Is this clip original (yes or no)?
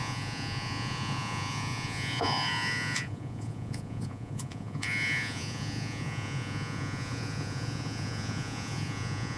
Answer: no